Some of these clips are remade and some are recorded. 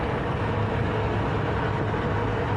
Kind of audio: recorded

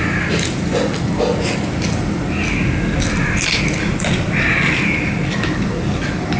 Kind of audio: recorded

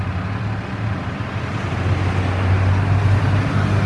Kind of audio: recorded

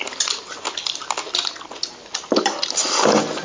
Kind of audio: recorded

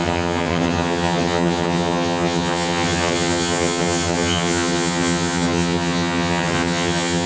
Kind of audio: remade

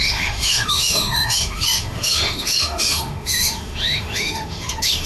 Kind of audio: remade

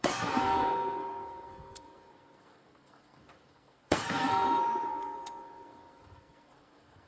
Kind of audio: remade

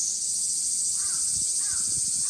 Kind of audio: recorded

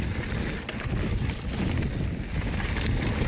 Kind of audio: recorded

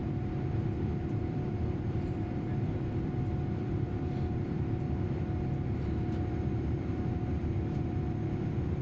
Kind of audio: remade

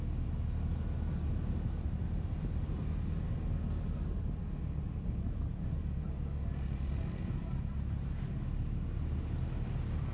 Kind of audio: recorded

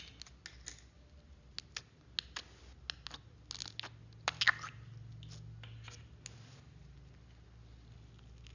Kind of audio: recorded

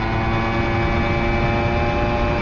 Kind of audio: recorded